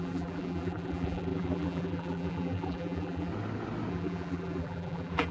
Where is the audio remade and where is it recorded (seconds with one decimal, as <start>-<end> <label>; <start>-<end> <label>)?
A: 0.0-3.3 remade; 3.3-3.9 recorded; 3.9-5.3 remade